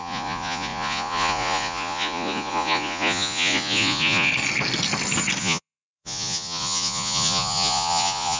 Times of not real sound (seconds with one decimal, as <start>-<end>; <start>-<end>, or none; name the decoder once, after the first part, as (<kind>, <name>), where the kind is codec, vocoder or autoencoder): 0.0-4.3 (vocoder, Vocos); 5.4-8.4